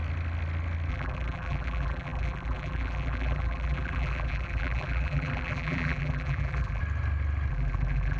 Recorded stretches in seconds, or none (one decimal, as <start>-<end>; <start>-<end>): 0.0-0.9; 6.8-7.5